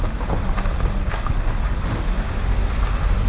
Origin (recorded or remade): recorded